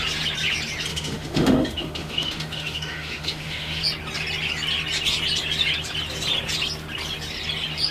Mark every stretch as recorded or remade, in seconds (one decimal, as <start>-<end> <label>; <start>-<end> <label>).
0.0-0.9 recorded; 0.9-3.8 remade; 3.8-7.9 recorded